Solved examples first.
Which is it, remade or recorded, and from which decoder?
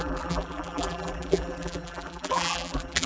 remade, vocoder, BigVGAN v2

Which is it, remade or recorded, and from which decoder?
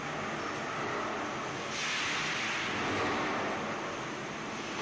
recorded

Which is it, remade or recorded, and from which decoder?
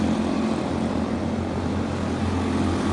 recorded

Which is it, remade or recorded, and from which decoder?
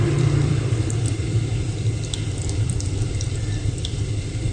remade, vocoder, BigVGAN v2